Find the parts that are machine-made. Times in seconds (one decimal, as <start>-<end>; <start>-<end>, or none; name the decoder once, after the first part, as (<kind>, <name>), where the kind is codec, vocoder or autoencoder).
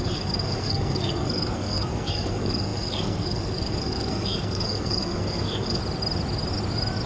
0.0-5.8 (codec, SNAC)